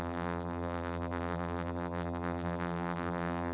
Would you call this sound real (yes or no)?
no